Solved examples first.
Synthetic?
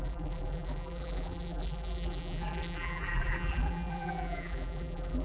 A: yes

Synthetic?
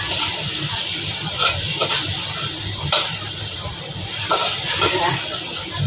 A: yes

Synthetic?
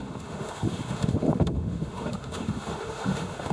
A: yes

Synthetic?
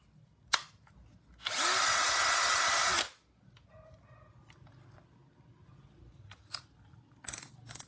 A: no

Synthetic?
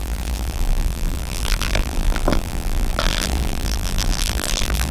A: yes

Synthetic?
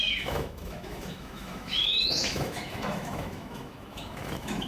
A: yes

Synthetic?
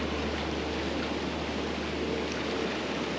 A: no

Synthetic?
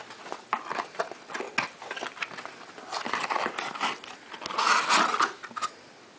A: no